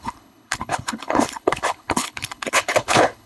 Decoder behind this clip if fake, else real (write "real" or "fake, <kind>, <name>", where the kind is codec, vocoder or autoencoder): fake, codec, HILCodec